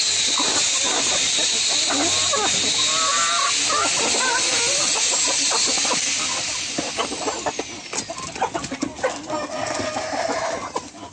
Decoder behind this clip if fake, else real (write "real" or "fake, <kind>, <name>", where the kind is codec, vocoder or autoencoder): real